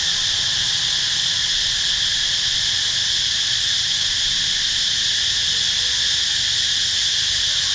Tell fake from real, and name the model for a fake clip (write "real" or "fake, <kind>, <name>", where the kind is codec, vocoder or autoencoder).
real